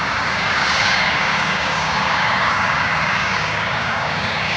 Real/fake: fake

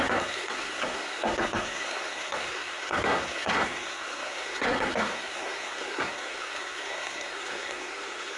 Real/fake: fake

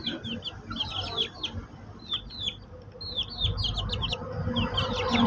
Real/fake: real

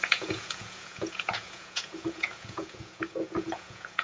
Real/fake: fake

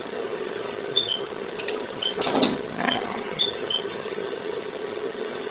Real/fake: fake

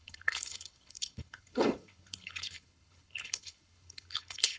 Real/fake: fake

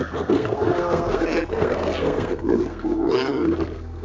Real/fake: fake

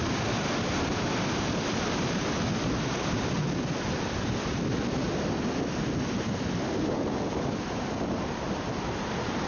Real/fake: real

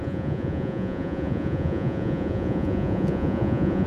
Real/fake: fake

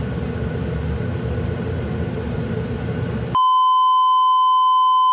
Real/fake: real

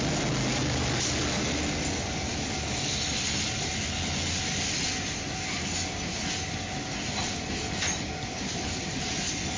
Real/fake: real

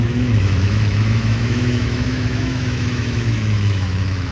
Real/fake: fake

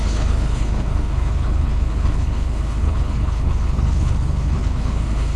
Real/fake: fake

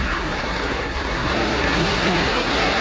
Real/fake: fake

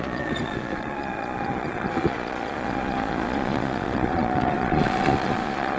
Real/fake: fake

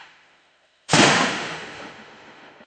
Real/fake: fake